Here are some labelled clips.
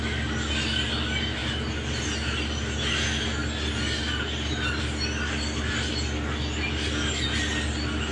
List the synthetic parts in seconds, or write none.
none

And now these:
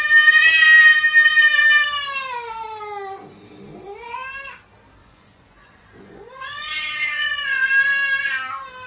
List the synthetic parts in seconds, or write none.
5.0-7.7

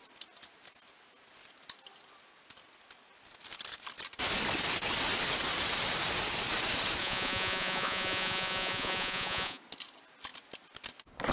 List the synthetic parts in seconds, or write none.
7.0-9.6

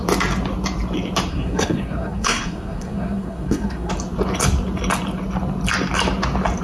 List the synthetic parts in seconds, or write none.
1.3-3.9

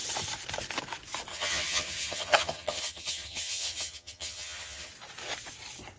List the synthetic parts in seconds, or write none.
1.3-4.9

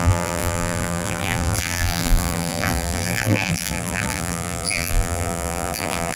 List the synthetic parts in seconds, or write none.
0.0-6.2

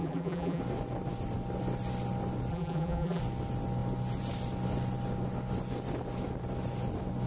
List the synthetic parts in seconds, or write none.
0.0-0.6; 2.5-3.2